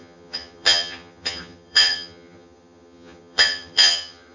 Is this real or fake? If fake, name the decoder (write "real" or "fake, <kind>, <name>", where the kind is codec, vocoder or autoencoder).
fake, vocoder, HiFi-GAN